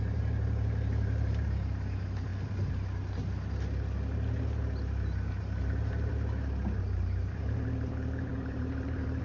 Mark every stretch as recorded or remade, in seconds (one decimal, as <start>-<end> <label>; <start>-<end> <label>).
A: 0.0-2.3 remade; 2.3-5.4 recorded; 5.4-6.1 remade; 6.1-6.8 recorded; 6.8-9.2 remade